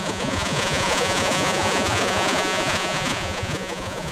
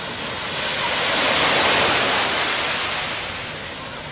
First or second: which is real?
second